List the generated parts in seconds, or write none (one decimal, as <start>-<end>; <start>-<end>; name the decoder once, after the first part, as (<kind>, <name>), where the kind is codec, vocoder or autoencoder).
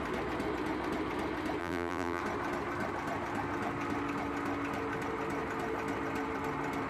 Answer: 1.6-2.2 (vocoder, BigVGAN v2)